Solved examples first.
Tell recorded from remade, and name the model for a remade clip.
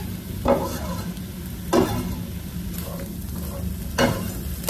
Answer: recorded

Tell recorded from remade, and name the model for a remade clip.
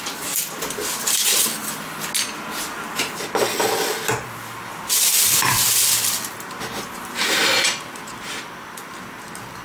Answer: recorded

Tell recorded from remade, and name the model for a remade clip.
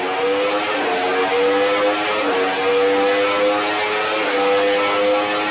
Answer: recorded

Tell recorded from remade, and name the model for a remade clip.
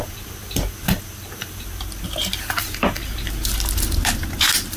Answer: remade, vocoder, BigVGAN v2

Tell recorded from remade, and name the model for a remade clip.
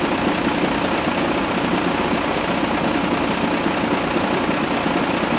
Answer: recorded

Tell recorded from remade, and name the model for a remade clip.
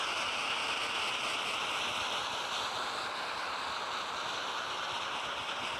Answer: remade, vocoder, BigVGAN v2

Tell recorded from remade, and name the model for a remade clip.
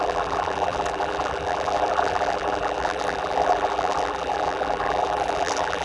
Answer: remade, vocoder, BigVGAN v2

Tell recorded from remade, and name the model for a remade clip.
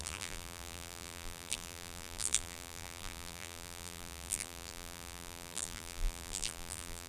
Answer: remade, vocoder, BigVGAN v2